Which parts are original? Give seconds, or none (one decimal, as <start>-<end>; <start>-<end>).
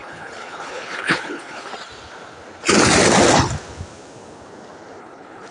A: 1.7-5.0